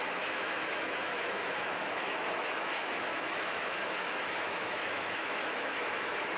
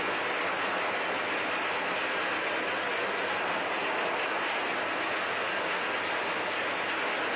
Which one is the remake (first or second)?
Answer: first